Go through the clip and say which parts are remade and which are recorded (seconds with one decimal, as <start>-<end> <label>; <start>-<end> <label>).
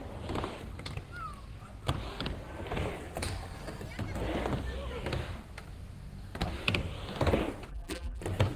0.0-7.7 recorded; 7.7-8.2 remade; 8.2-8.6 recorded